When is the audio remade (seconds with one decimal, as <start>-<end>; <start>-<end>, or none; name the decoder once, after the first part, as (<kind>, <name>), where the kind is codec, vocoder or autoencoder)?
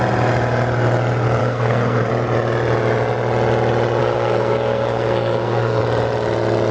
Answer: 1.4-2.1 (codec, SNAC); 4.0-5.8